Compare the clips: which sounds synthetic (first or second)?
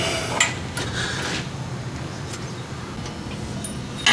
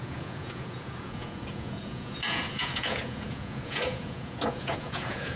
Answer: second